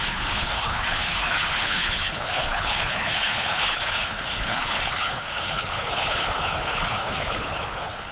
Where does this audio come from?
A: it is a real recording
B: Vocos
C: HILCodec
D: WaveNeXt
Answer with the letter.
C